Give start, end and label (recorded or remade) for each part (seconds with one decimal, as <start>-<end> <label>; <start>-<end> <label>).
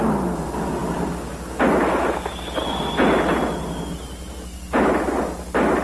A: 0.0-5.8 recorded